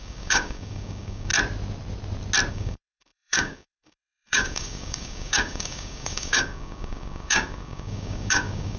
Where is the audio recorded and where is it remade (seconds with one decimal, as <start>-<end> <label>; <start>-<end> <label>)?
0.0-1.3 remade; 1.3-2.5 recorded; 2.5-8.8 remade